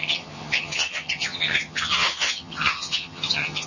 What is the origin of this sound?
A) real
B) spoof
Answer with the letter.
B